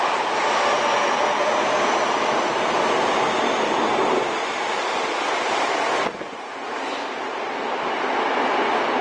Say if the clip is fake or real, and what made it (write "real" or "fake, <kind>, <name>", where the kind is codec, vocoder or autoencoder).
real